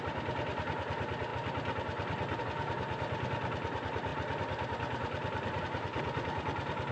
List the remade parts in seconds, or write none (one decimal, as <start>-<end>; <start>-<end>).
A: none